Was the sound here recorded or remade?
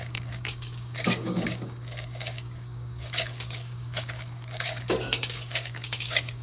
remade